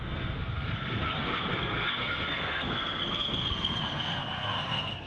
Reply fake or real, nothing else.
fake